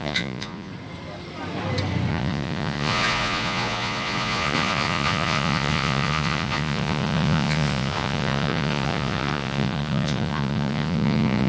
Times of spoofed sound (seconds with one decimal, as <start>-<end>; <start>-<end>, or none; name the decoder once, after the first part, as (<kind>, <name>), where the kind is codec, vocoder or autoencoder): 0.0-0.7 (vocoder, Vocos); 2.1-11.5